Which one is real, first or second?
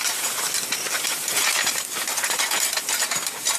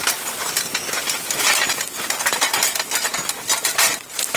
second